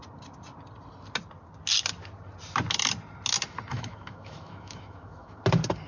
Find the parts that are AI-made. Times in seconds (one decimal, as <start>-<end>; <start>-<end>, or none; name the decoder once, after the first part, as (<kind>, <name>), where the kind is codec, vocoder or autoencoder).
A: 3.7-5.4 (autoencoder, DAC-VAE)